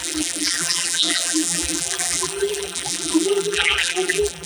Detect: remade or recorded remade